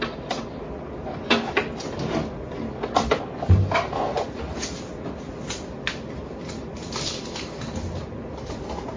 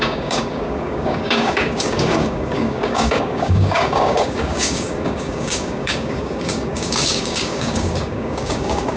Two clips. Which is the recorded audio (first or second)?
first